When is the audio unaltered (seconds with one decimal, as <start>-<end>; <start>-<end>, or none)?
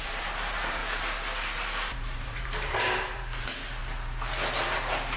0.8-1.9; 3.8-5.2